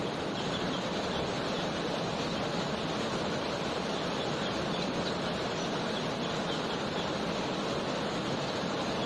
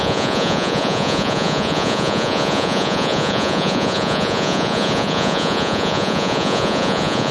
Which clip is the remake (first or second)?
second